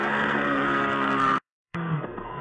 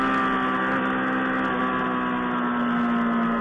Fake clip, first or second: first